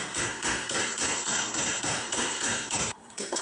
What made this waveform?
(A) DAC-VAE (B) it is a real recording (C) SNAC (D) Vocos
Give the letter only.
C